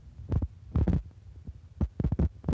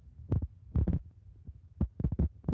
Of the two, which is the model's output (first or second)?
second